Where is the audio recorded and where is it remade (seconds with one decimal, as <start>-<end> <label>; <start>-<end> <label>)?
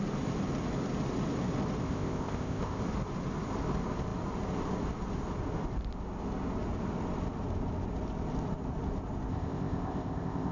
0.0-1.8 recorded; 1.8-2.8 remade; 2.8-9.3 recorded; 9.3-10.5 remade